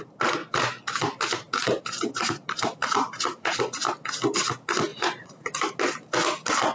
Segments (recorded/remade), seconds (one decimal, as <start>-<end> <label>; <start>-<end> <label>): 0.0-0.4 recorded; 0.4-3.6 remade; 3.6-4.9 recorded; 4.9-5.8 remade; 5.8-6.7 recorded